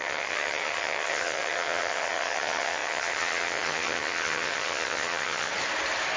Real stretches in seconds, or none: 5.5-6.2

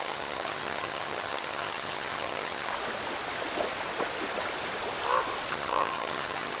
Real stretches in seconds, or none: 2.7-5.5

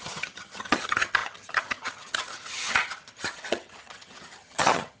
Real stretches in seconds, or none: none

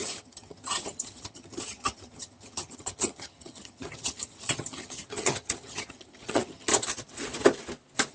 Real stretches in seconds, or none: 6.7-8.1